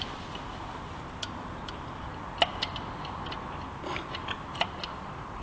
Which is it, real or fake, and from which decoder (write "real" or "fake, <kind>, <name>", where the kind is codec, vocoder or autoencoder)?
real